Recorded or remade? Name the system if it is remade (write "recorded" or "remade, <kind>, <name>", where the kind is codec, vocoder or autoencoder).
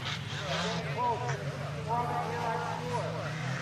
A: recorded